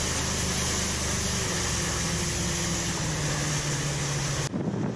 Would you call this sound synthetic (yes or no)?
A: no